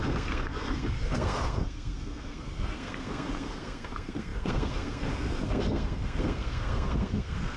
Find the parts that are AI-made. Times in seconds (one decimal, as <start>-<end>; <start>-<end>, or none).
0.0-7.6